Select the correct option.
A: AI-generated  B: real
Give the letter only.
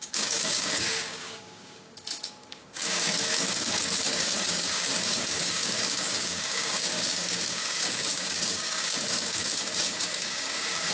A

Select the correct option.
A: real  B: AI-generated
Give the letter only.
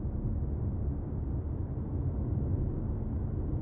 A